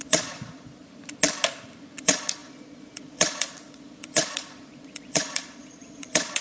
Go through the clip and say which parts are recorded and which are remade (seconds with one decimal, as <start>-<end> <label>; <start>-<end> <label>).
0.0-0.8 remade; 0.8-2.0 recorded; 2.0-6.4 remade